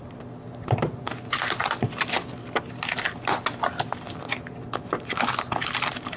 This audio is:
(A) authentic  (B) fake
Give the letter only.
A